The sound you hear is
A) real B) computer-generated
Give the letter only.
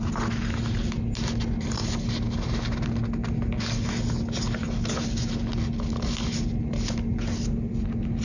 A